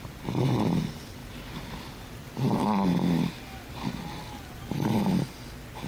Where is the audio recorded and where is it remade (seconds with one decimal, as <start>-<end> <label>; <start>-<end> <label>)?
0.0-5.9 recorded